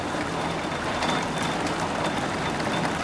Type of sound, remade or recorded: recorded